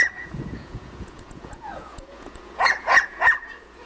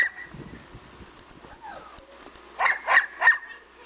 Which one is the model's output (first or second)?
first